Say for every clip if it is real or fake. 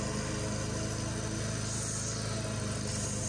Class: real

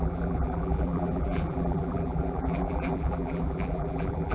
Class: fake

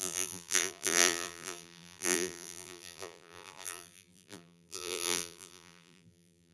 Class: fake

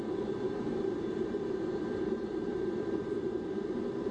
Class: fake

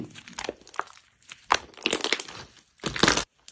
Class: real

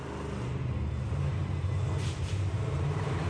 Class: fake